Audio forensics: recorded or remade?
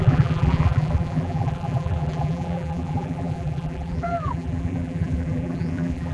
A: remade